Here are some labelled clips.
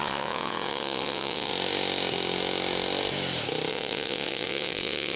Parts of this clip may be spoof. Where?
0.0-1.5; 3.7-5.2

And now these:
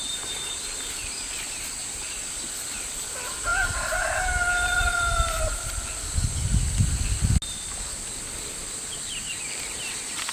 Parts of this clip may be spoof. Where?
none

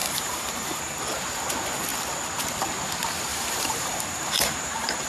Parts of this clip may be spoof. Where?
0.0-1.0; 3.3-5.1

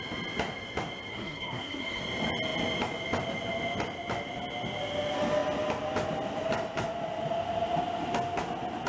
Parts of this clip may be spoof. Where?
1.1-2.0